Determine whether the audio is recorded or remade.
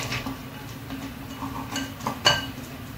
recorded